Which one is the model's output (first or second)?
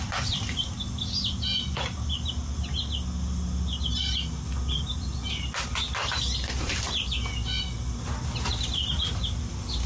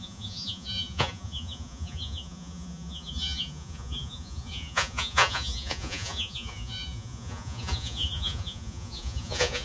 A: second